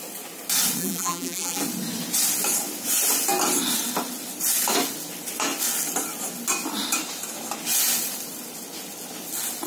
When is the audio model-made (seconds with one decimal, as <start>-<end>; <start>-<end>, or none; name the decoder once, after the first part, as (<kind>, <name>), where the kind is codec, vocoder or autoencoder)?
0.8-1.6 (vocoder, BigVGAN v2)